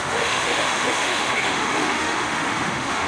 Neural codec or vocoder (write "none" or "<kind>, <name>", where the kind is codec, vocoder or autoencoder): autoencoder, DAC-VAE